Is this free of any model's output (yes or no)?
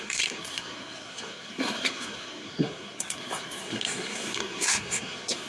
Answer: no